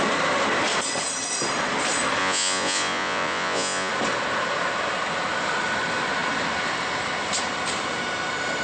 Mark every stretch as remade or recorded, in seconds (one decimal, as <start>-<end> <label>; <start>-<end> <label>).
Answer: 0.0-2.2 recorded; 2.2-3.9 remade; 3.9-8.6 recorded